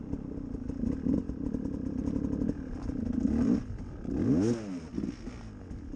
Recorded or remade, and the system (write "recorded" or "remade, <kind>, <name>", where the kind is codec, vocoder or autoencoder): recorded